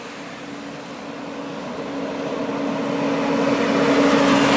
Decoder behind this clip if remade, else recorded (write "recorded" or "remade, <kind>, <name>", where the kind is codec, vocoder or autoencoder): recorded